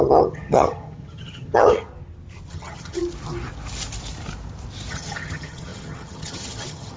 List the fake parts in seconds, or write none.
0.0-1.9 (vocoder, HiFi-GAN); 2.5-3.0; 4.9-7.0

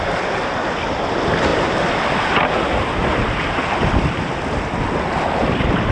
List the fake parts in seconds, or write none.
1.5-2.6 (vocoder, BigVGAN v2); 3.1-4.3; 5.4-5.9

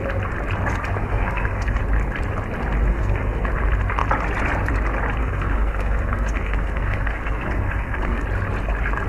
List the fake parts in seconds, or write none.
1.0-1.8 (codec, SNAC); 2.9-3.5; 5.2-8.2

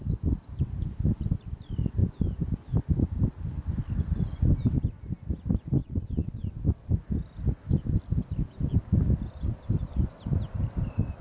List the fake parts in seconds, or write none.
5.8-6.5 (vocoder, WaveNeXt)